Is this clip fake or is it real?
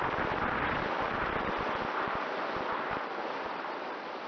fake